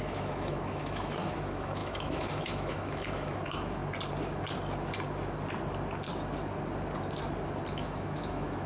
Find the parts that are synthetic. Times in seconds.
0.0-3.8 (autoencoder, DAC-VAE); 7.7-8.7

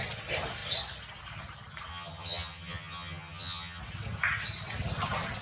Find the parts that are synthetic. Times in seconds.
1.9-3.8 (vocoder, HiFi-GAN)

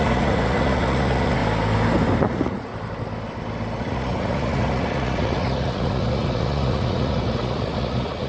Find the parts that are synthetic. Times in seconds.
0.0-1.4 (vocoder, Vocos); 2.2-2.7; 3.8-8.3